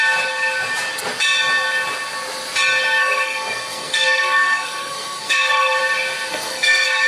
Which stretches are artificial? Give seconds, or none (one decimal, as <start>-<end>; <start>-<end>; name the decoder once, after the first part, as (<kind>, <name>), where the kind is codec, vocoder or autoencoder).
3.0-5.8 (codec, SNAC); 6.3-7.1